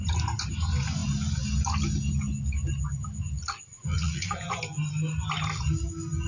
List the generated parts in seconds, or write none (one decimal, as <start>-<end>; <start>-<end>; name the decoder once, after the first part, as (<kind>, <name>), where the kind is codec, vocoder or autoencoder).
3.7-4.6 (vocoder, Vocos)